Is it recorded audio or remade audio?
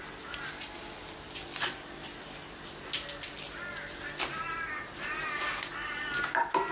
recorded